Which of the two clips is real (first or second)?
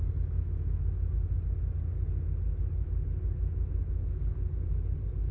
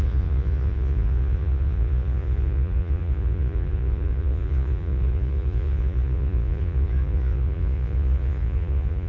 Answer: first